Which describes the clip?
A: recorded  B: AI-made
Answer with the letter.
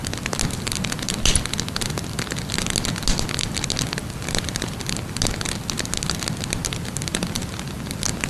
A